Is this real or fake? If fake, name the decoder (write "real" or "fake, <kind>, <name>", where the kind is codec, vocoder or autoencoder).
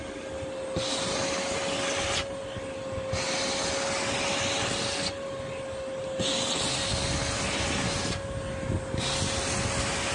real